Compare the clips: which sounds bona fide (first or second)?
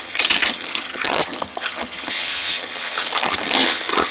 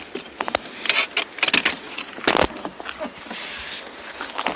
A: second